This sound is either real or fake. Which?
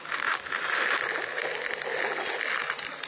real